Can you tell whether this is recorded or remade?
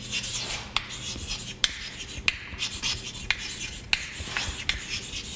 recorded